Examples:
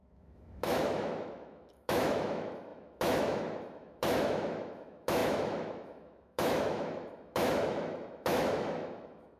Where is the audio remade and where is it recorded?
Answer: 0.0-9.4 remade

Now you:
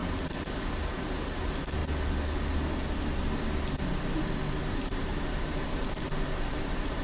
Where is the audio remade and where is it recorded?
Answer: 0.0-0.7 recorded; 0.7-1.8 remade; 1.8-4.6 recorded; 4.6-7.0 remade

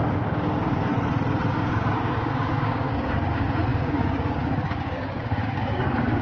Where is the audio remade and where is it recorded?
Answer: 0.0-0.9 remade; 0.9-1.5 recorded; 1.5-6.2 remade

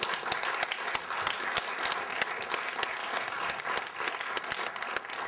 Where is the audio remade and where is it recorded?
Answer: 0.0-3.0 recorded; 3.0-3.6 remade; 3.6-5.3 recorded

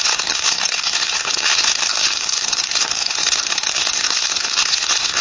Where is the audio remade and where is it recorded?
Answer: 0.0-5.2 remade